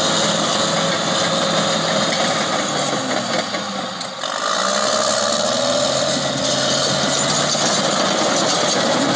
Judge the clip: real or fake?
real